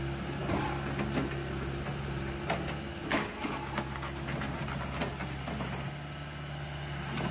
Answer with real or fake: real